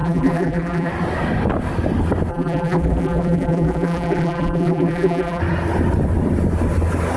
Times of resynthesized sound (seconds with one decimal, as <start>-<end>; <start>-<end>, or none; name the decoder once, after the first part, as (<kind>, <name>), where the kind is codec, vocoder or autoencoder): 0.0-0.9 (vocoder, BigVGAN v2); 2.3-5.4